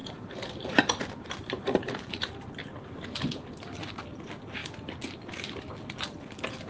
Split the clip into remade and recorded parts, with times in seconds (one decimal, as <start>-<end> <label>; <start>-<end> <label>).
0.0-2.5 remade; 2.5-6.7 recorded